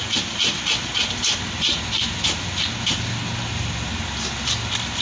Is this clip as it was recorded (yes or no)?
yes